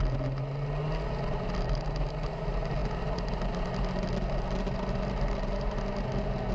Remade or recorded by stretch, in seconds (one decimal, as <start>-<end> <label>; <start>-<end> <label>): 0.0-6.5 recorded